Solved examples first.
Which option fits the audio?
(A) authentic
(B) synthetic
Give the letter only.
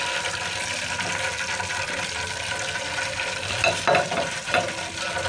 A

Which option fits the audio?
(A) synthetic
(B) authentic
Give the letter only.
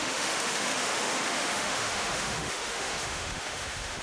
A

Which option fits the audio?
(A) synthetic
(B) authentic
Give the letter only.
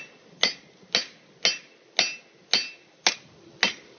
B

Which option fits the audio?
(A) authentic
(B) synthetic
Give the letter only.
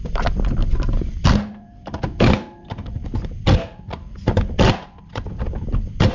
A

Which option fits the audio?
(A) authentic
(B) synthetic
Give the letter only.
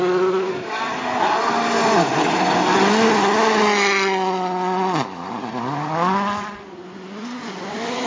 A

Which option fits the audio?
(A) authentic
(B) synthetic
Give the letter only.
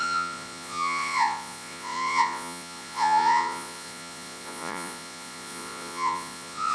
B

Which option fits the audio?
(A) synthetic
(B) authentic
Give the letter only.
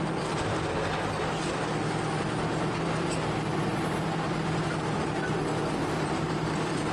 B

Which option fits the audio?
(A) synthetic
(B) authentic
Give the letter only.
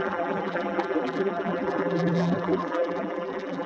A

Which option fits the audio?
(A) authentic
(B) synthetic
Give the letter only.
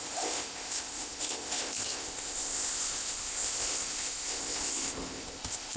B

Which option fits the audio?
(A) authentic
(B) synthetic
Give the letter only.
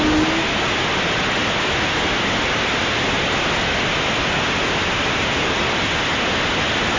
A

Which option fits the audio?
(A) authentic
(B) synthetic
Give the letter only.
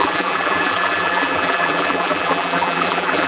B